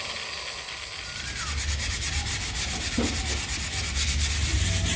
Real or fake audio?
real